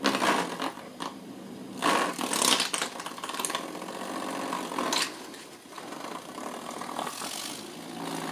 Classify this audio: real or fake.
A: real